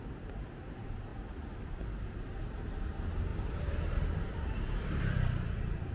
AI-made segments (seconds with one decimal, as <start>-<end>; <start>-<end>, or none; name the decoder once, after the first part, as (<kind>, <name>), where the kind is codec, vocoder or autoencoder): 0.0-1.1 (vocoder, BigVGAN v2); 2.4-5.9